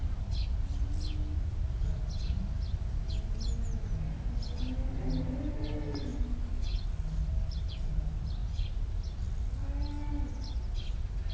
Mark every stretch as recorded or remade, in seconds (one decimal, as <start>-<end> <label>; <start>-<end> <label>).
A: 0.0-11.3 recorded